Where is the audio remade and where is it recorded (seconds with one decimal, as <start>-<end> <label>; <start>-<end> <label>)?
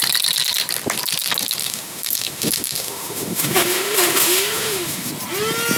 0.0-1.6 recorded; 1.6-5.1 remade; 5.1-5.8 recorded